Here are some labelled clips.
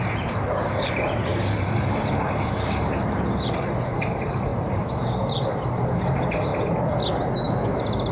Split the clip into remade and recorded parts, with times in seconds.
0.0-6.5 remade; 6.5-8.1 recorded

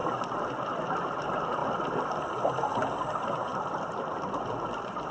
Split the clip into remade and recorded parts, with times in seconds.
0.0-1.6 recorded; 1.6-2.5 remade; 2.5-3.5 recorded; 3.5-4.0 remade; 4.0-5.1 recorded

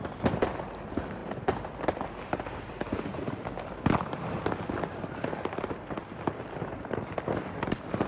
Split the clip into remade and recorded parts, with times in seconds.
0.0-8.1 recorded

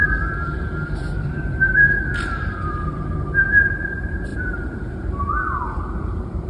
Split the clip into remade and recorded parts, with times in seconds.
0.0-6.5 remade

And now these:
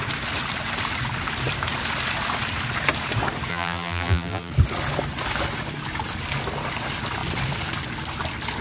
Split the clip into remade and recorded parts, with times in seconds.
0.0-3.5 recorded; 3.5-4.5 remade; 4.5-8.6 recorded